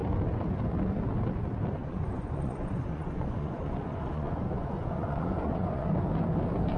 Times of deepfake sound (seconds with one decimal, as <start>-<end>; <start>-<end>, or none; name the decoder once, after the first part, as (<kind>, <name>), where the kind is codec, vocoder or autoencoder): 1.8-5.9 (vocoder, Vocos)